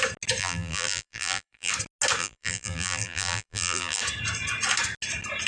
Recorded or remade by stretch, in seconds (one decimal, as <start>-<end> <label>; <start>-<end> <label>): 0.0-0.4 recorded; 0.4-1.7 remade; 1.7-2.2 recorded; 2.2-4.0 remade; 4.0-5.5 recorded